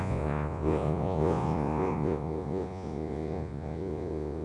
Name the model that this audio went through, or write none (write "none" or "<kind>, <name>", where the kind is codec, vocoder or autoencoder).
vocoder, Vocos